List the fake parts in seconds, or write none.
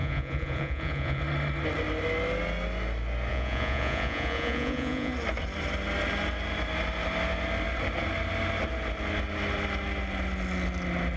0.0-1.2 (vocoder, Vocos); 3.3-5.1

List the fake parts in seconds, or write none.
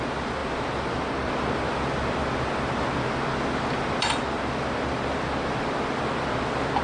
none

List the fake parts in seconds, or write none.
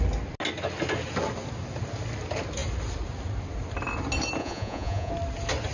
4.4-5.1 (vocoder, Vocos)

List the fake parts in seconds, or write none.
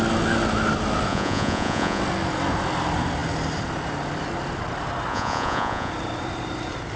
1.1-2.0 (vocoder, Vocos); 5.1-5.9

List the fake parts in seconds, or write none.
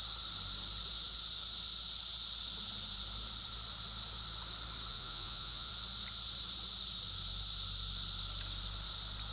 4.9-5.7 (vocoder, Vocos)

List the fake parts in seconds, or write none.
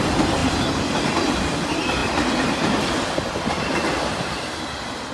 none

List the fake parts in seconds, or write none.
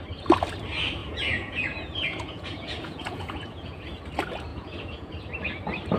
1.0-3.8 (vocoder, Vocos); 4.5-5.1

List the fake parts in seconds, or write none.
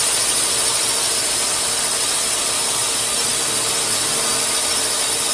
none